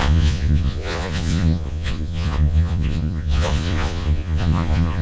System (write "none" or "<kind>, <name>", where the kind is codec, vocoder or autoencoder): vocoder, Vocos